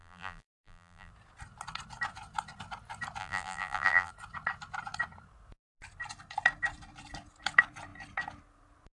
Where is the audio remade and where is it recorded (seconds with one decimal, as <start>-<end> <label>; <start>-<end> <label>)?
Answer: 0.0-1.1 remade; 1.1-3.2 recorded; 3.2-4.1 remade; 4.1-9.0 recorded